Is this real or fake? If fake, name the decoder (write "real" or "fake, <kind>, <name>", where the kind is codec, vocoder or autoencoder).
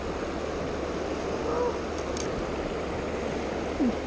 real